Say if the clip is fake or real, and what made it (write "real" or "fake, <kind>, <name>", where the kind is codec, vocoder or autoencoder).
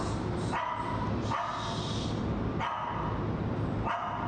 real